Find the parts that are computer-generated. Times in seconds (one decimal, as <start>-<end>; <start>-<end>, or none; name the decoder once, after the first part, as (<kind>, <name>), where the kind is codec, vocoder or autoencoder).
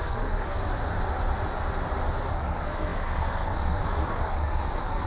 0.0-0.6 (codec, SNAC); 2.3-5.1